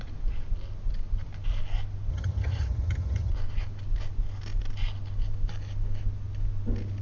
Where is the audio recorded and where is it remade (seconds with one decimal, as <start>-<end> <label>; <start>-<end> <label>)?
0.0-2.1 recorded; 2.1-3.3 remade; 3.3-7.0 recorded